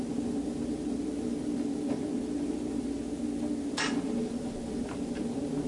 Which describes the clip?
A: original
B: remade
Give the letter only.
A